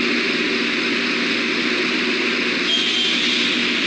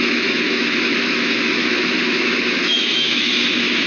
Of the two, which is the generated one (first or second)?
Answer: second